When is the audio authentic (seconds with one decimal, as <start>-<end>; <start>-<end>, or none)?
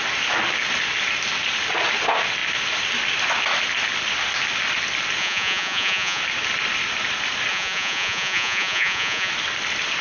0.0-5.2; 6.2-7.5; 9.3-10.0